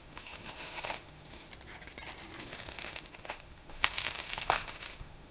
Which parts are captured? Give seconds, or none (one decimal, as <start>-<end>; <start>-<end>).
1.5-2.4